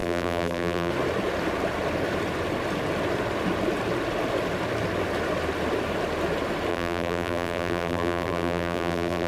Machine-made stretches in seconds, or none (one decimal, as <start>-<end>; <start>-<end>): 0.0-0.9; 6.7-9.3

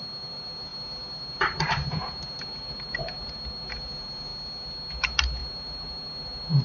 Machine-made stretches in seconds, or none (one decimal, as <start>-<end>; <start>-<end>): 0.0-4.3; 4.9-6.6

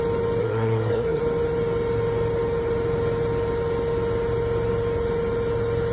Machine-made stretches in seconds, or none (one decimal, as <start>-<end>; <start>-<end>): 0.4-1.2

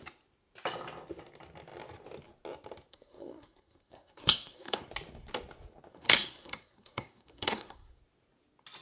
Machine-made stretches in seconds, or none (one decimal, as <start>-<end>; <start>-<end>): 2.9-4.8; 5.9-8.0